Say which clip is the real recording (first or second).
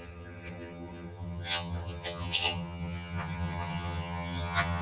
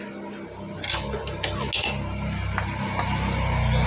second